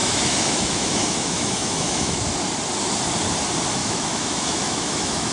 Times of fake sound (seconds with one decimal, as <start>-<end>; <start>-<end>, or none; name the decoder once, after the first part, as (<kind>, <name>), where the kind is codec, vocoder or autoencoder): 0.0-2.3 (autoencoder, DAC-VAE); 3.8-5.3